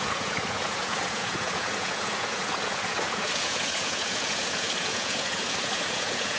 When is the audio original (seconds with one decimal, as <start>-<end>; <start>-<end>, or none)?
none